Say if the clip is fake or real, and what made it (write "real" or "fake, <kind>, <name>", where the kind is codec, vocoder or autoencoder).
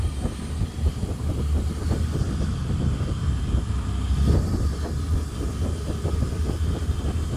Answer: fake, vocoder, BigVGAN v2